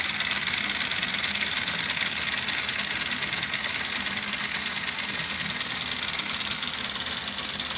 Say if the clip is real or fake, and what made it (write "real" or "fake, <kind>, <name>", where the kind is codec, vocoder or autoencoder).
real